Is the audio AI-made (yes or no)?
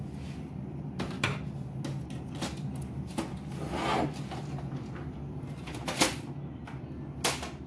no